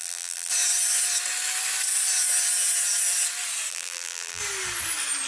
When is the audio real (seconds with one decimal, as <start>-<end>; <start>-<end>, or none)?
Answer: 0.5-3.7; 4.4-5.3